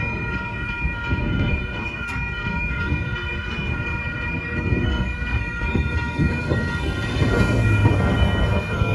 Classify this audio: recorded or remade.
remade